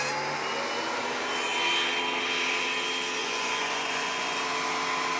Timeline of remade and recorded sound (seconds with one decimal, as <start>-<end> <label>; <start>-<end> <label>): 0.0-3.2 recorded; 3.2-4.4 remade; 4.4-5.2 recorded